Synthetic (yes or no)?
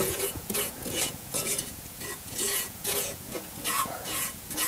yes